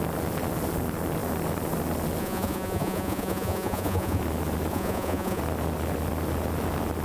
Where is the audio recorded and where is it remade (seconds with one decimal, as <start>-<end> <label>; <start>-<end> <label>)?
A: 0.0-2.2 recorded; 2.2-4.2 remade; 4.2-4.7 recorded; 4.7-5.4 remade; 5.4-7.0 recorded